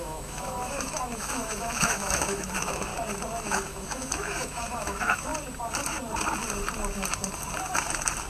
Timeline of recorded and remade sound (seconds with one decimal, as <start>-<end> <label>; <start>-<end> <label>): 0.0-2.9 remade; 2.9-3.4 recorded; 3.4-5.3 remade; 5.3-8.3 recorded